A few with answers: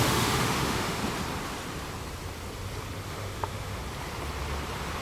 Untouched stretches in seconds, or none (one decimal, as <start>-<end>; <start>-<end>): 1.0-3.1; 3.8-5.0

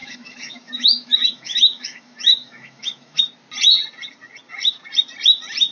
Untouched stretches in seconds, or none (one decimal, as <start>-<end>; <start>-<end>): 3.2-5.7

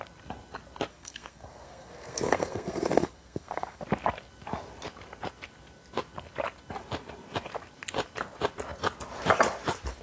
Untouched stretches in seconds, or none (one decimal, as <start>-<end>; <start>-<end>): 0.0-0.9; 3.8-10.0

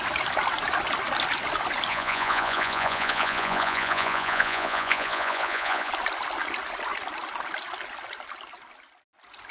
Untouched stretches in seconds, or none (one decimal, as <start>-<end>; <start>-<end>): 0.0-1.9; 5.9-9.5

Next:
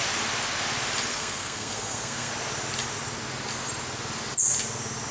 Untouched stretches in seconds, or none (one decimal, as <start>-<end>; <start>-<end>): 0.0-1.1; 2.3-5.1

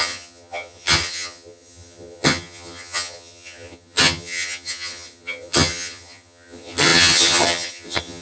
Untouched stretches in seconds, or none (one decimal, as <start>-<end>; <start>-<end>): none

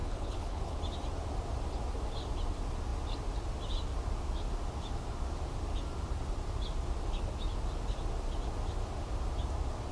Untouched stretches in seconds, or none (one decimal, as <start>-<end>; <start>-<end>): 0.8-9.9